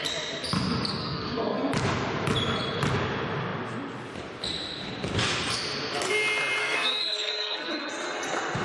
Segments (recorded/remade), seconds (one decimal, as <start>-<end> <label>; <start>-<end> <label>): 0.0-1.0 recorded; 1.0-1.7 remade; 1.7-6.6 recorded; 6.6-7.9 remade; 7.9-8.6 recorded